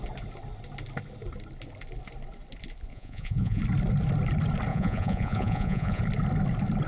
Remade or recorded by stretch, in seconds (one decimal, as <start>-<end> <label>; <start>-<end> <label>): 0.0-2.9 recorded; 2.9-3.6 remade; 3.6-4.7 recorded; 4.7-6.0 remade; 6.0-6.9 recorded